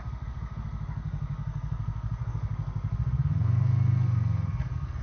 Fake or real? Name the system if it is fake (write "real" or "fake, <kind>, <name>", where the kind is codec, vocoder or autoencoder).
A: fake, codec, SNAC